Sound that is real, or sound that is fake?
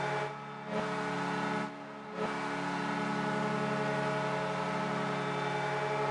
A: real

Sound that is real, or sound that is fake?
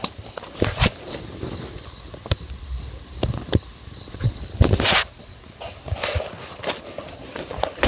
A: real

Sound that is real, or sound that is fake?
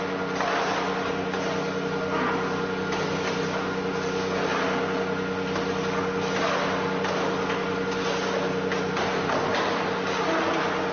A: real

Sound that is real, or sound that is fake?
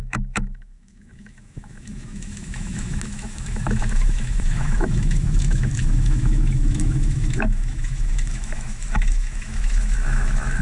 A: fake